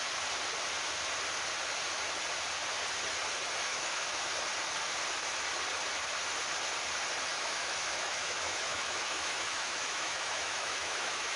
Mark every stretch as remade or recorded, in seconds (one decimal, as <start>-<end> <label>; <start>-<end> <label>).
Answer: 0.0-3.7 recorded; 3.7-4.3 remade; 4.3-7.3 recorded; 7.3-11.4 remade